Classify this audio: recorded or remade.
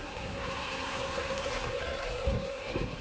remade